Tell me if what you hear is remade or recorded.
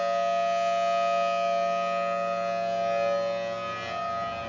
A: recorded